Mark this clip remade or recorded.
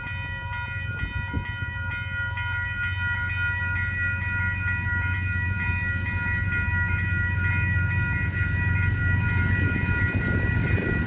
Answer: recorded